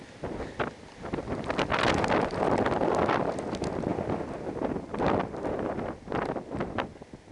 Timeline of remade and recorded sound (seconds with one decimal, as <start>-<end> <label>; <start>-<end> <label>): 0.0-7.3 recorded